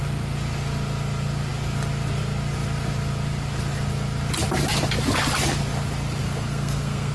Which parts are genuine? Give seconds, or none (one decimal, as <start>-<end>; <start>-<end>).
0.0-6.2